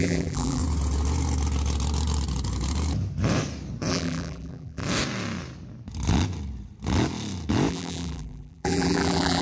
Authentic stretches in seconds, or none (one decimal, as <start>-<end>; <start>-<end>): 0.6-3.9; 4.8-7.7